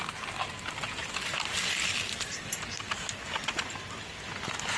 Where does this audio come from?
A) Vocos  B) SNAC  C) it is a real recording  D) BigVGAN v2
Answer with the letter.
C